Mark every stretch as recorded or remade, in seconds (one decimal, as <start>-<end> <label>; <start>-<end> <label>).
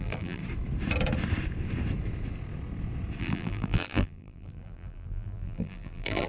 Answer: 0.0-0.4 remade; 0.4-3.2 recorded; 3.2-6.3 remade